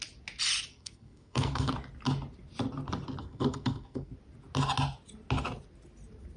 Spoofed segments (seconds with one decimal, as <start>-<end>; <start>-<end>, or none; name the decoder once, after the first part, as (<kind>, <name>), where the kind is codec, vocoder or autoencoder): 0.7-1.7 (codec, SNAC); 3.2-4.1